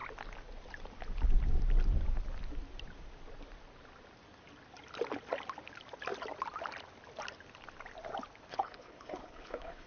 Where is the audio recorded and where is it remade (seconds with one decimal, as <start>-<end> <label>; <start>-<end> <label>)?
0.0-8.5 recorded; 8.5-9.9 remade